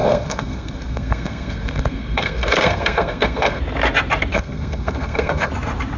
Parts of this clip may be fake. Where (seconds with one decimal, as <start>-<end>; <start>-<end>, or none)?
0.0-3.6; 4.3-5.5